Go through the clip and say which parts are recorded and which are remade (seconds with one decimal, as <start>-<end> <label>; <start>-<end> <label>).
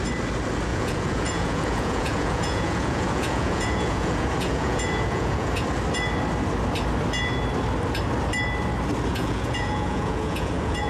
0.0-0.7 recorded; 0.7-5.5 remade; 5.5-9.1 recorded; 9.1-10.9 remade